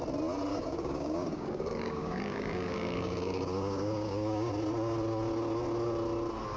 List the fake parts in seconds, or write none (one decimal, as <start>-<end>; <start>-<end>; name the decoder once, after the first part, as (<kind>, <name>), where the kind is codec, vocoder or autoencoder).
0.5-4.5 (codec, DAC)